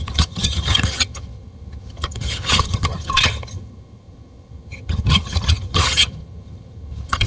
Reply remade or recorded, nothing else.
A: remade